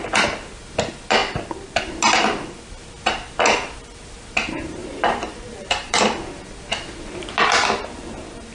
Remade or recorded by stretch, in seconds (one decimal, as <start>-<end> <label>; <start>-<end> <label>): 0.0-4.8 recorded; 4.8-6.0 remade; 6.0-8.5 recorded